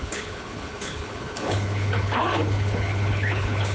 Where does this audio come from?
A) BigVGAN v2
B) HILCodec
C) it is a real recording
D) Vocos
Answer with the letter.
B